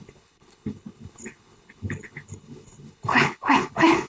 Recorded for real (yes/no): no